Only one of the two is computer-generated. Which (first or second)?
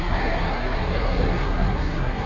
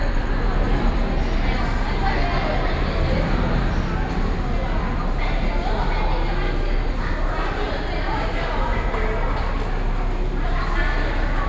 first